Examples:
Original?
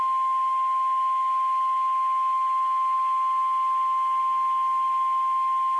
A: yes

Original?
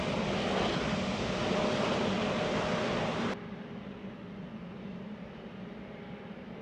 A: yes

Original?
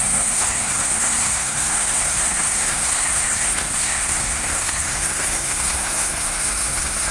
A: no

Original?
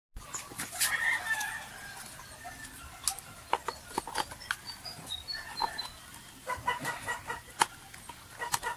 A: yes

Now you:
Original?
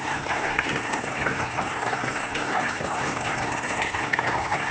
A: no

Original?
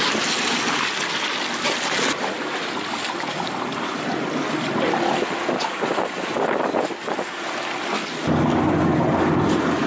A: yes